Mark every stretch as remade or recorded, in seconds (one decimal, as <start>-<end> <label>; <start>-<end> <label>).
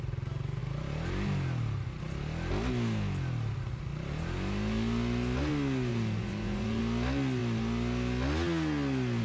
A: 0.0-5.9 recorded; 5.9-6.8 remade; 6.8-9.2 recorded